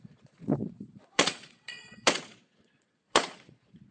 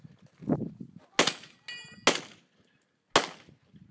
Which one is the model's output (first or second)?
first